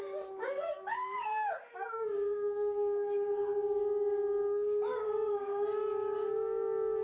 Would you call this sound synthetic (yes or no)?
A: yes